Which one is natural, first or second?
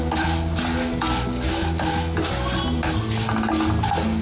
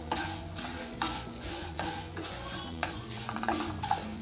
first